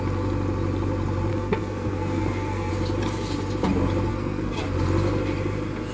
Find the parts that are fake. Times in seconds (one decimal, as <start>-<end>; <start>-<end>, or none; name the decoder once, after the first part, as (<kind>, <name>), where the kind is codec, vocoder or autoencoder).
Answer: 1.3-2.7 (codec, SNAC); 4.1-4.6